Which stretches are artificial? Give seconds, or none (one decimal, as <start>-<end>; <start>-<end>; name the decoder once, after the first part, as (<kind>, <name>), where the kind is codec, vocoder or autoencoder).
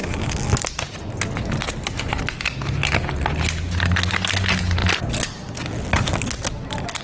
none